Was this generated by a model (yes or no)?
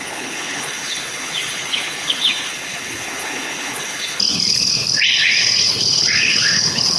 yes